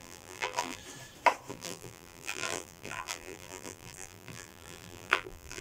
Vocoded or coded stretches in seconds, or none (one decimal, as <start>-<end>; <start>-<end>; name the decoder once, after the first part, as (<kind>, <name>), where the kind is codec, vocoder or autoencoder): 0.0-0.8 (vocoder, BigVGAN v2); 1.5-5.6